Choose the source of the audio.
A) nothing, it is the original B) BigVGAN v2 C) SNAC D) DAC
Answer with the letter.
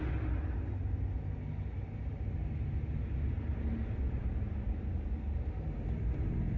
A